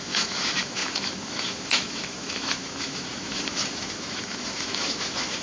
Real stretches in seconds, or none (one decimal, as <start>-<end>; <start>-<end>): none